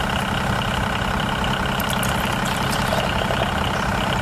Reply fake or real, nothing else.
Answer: fake